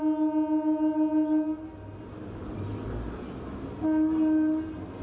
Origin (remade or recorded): recorded